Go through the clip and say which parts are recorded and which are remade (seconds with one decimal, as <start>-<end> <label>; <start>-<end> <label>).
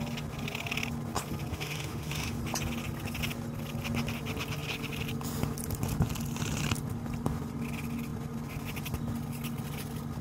0.0-1.5 recorded; 1.5-2.4 remade; 2.4-10.2 recorded